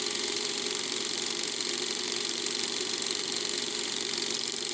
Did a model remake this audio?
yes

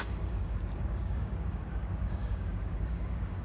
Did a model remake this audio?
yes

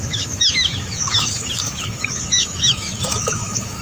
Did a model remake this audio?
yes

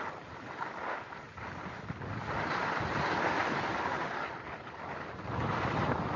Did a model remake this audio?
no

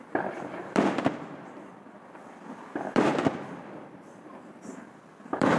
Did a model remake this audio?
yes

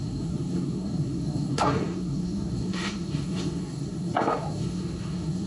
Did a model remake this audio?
yes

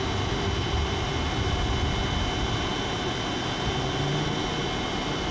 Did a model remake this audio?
no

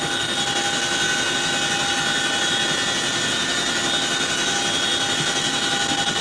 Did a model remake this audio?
no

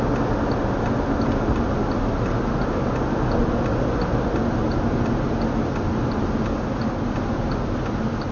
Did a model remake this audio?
no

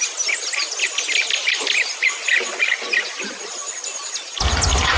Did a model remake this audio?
no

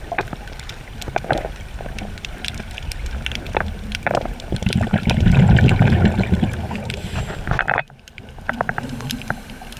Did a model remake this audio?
yes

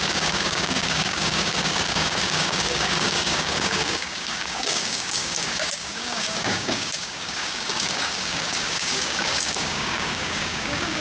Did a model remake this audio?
yes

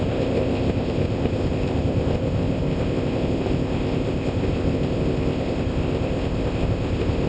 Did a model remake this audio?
yes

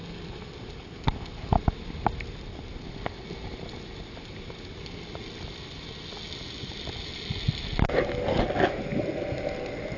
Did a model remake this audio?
no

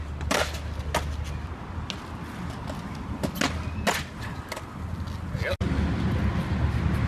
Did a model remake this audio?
no